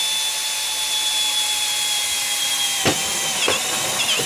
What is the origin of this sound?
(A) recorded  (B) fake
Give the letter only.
A